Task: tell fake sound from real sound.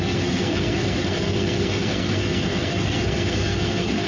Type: fake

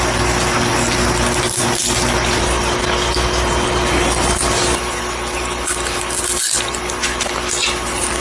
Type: real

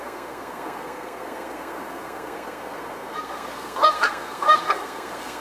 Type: fake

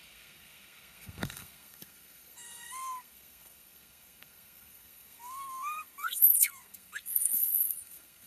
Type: fake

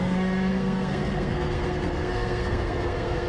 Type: fake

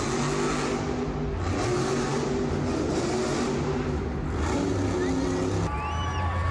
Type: real